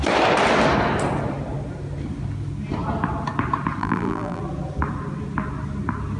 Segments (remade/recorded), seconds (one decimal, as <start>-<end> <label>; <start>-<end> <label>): 0.0-3.8 recorded; 3.8-4.4 remade; 4.4-6.2 recorded